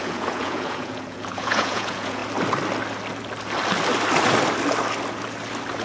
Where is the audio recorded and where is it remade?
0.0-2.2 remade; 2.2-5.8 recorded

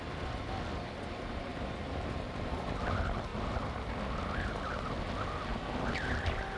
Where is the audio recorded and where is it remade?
0.0-6.6 recorded